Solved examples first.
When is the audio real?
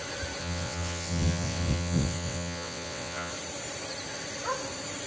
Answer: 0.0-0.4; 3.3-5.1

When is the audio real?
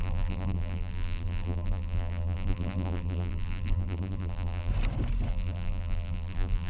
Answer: 4.7-5.3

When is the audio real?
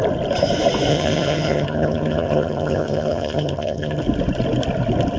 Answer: 0.0-0.9; 4.0-5.2